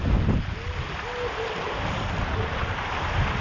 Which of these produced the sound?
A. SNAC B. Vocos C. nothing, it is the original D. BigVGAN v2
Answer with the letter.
C